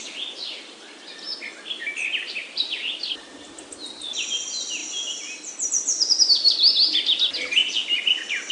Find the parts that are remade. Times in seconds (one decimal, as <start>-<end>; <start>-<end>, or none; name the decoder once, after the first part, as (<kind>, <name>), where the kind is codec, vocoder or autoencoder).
2.4-3.4 (vocoder, BigVGAN v2)